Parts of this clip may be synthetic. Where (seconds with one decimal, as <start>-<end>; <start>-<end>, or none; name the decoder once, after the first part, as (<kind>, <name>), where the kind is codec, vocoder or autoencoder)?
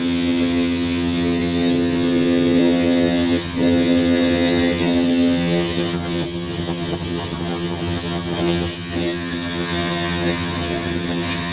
0.0-11.5 (vocoder, HiFi-GAN)